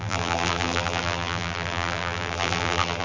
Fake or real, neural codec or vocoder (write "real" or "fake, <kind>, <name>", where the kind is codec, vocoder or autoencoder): fake, vocoder, BigVGAN v2